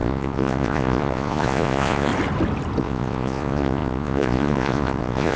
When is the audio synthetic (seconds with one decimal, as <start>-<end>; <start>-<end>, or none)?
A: 0.0-2.1; 2.8-5.4